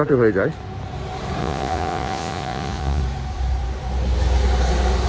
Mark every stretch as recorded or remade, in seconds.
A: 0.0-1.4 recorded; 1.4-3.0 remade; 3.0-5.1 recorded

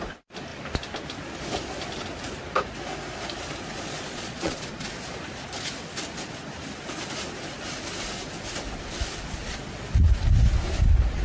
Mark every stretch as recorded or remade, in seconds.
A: 0.0-3.7 recorded; 3.7-4.9 remade; 4.9-11.2 recorded

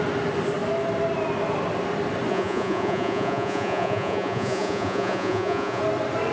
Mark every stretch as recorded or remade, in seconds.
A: 0.0-2.3 recorded; 2.3-5.8 remade; 5.8-6.3 recorded

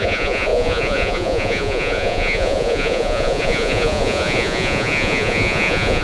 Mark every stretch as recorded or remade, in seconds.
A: 0.0-6.0 remade